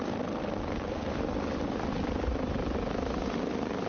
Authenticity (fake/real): real